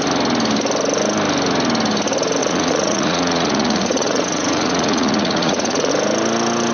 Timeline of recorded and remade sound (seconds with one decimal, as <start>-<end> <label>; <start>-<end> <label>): 0.0-2.4 recorded; 2.4-5.9 remade; 5.9-6.7 recorded